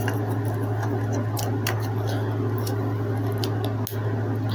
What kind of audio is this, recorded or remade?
recorded